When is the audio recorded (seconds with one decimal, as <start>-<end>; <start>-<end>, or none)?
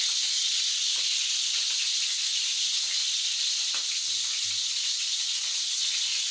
0.0-6.3